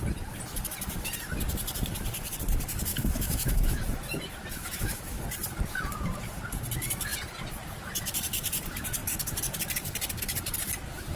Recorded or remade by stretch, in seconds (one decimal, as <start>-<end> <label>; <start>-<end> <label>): 0.0-2.9 recorded; 2.9-3.9 remade; 3.9-4.6 recorded; 4.6-5.2 remade; 5.2-11.2 recorded